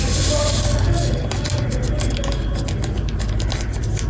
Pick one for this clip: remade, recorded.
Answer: recorded